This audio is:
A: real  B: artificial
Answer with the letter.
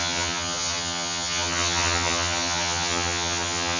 B